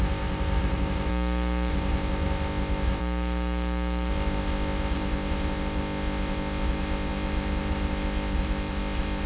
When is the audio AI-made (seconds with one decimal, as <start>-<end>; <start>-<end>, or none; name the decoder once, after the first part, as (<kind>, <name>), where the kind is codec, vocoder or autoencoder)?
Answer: 0.0-1.1 (codec, ZipCodec); 1.7-3.0; 4.1-9.3